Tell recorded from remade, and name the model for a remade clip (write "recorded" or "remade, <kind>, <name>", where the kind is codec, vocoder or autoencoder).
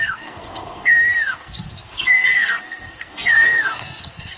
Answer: remade, codec, SNAC